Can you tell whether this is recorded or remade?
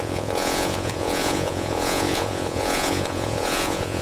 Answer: remade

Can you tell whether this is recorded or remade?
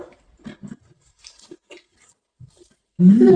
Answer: recorded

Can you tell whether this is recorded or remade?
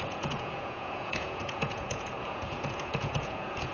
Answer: remade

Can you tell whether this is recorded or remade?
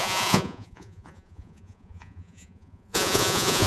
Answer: remade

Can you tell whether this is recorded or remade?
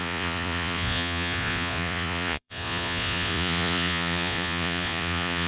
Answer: remade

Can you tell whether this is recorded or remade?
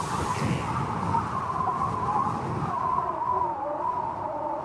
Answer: recorded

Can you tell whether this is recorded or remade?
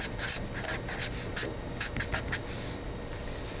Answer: recorded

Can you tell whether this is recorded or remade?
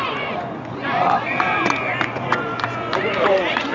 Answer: remade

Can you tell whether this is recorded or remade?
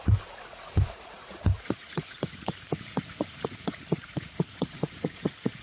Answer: remade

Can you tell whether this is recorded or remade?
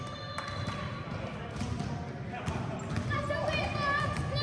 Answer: recorded